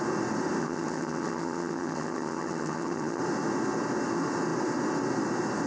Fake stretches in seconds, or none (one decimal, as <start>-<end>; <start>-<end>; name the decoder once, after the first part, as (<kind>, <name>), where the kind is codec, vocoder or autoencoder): 0.6-3.2 (vocoder, HiFi-GAN)